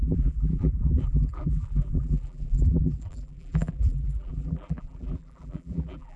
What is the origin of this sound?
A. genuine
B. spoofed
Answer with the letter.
B